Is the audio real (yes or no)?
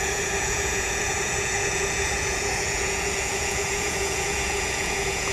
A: no